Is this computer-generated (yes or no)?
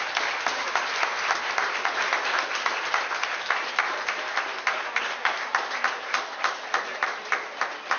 yes